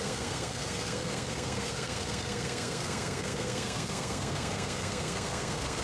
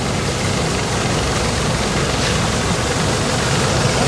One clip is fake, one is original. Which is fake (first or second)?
first